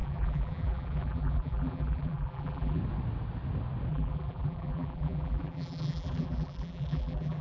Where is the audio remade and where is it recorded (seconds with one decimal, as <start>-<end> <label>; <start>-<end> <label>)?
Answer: 0.0-2.8 remade; 2.8-3.9 recorded; 3.9-7.4 remade